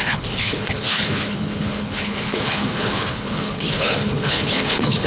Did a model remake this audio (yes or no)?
yes